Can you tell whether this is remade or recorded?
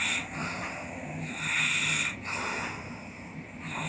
recorded